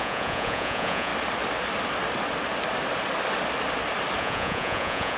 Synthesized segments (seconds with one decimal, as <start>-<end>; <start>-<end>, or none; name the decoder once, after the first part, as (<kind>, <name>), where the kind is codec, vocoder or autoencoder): 0.0-1.1 (vocoder, Vocos); 4.2-5.2